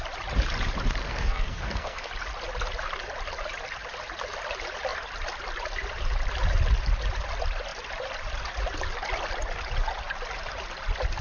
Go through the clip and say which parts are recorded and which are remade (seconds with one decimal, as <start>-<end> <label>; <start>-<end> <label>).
0.0-1.0 recorded; 1.0-2.1 remade; 2.1-11.2 recorded